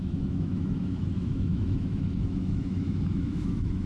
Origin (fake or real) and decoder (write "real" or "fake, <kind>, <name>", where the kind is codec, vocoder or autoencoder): fake, autoencoder, DAC-VAE